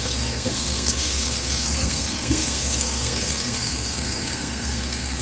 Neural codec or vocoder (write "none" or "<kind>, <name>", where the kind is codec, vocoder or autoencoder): codec, SNAC